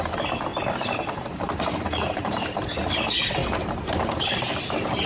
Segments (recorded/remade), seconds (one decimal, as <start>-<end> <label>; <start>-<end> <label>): 0.0-0.5 recorded; 0.5-2.9 remade; 2.9-3.4 recorded; 3.4-5.1 remade